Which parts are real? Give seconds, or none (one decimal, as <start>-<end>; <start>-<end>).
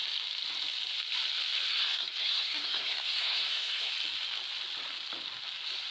0.0-1.7; 3.9-5.9